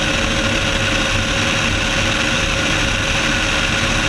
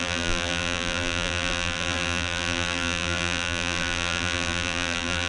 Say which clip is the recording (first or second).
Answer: first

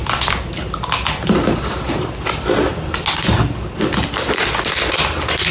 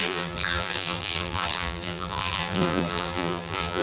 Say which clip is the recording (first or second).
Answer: first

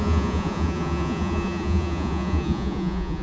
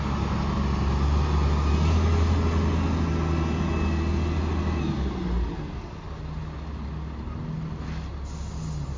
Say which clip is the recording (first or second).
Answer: second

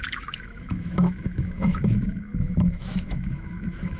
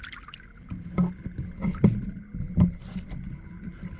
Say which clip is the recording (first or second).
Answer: second